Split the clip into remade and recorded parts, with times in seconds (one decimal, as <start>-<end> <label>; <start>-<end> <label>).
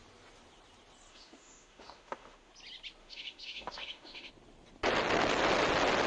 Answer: 0.0-1.1 recorded; 1.1-2.5 remade; 2.5-3.0 recorded; 3.0-4.3 remade; 4.3-6.1 recorded